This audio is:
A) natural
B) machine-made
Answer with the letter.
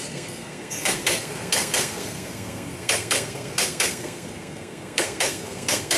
B